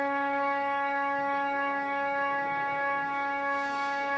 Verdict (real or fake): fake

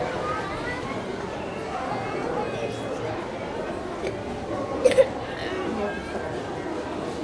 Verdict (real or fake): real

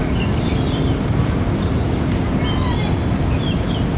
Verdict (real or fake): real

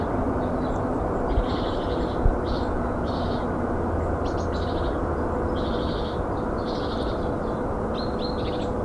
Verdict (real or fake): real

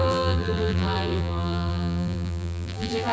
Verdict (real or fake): fake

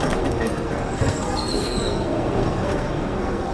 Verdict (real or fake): fake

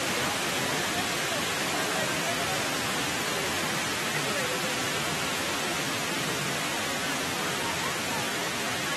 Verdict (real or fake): real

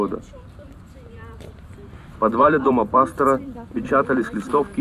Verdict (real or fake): fake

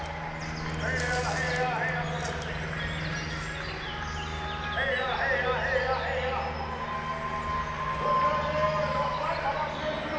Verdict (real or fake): real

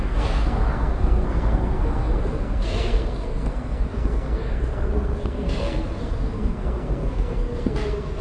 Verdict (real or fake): fake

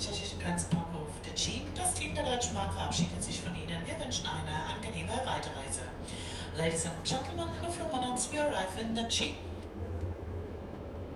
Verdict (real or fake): fake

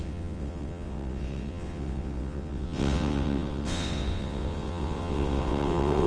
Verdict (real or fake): fake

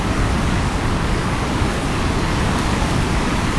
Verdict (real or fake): fake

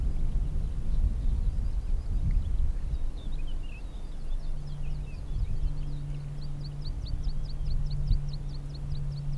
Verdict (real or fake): real